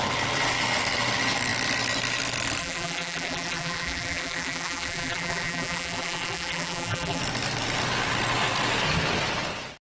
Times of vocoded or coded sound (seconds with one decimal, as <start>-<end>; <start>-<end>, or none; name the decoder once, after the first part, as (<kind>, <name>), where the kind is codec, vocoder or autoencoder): 2.6-7.2 (vocoder, BigVGAN v2)